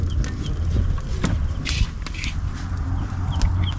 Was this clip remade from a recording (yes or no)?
no